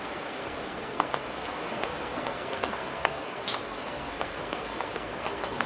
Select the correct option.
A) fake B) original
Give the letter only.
A